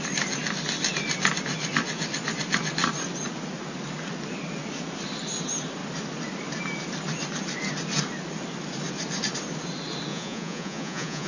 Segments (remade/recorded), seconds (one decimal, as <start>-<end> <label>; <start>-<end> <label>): 0.0-10.1 recorded; 10.1-11.3 remade